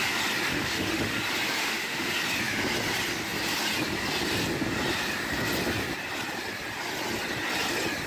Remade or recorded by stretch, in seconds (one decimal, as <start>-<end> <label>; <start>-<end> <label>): 0.0-0.5 recorded; 0.5-1.2 remade; 1.2-1.6 recorded; 1.6-2.1 remade; 2.1-8.1 recorded